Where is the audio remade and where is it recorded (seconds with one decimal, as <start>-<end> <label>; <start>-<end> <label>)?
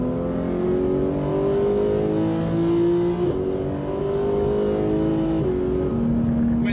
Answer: 0.0-6.7 recorded